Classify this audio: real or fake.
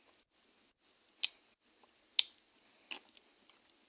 real